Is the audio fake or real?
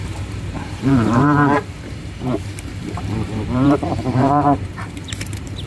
fake